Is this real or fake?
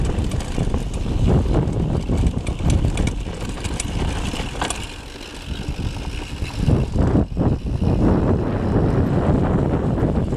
real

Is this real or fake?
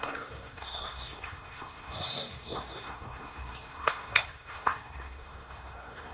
fake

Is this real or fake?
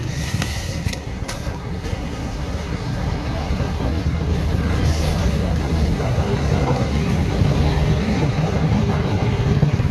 fake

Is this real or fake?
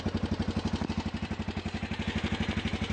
real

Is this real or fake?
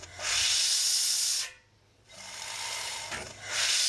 real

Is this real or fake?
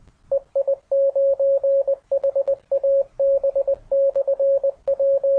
real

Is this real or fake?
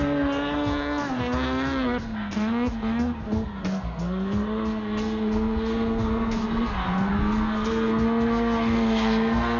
fake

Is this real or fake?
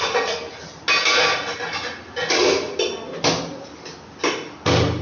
real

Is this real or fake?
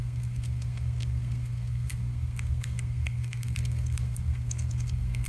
fake